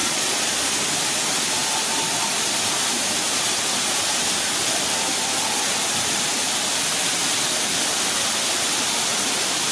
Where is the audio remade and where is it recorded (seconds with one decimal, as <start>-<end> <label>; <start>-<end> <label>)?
0.0-0.6 remade; 0.6-9.7 recorded